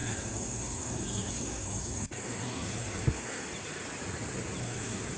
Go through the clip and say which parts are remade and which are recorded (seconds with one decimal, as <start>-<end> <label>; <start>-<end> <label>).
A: 0.0-3.5 remade; 3.5-4.6 recorded; 4.6-5.2 remade